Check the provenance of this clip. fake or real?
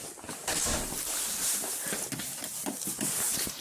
real